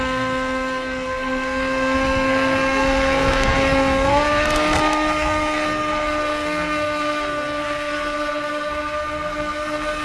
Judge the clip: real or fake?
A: fake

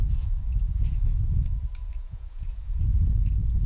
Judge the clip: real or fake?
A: fake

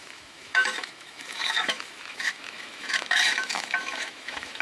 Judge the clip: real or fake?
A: fake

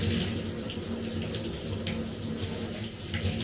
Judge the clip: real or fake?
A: real